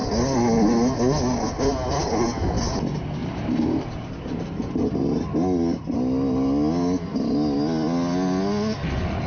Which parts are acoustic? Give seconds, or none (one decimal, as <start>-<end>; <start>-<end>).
0.0-3.2; 4.9-9.3